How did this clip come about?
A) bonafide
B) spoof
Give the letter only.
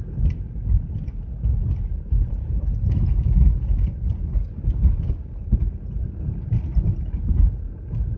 A